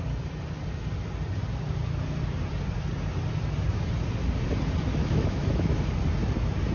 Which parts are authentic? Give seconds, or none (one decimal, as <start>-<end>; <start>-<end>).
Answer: 0.0-4.9; 5.8-6.7